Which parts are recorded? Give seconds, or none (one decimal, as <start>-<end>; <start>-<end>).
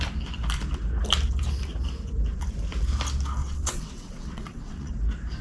0.0-3.4; 4.9-5.4